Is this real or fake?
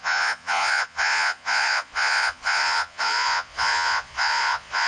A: fake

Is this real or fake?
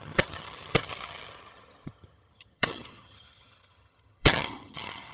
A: fake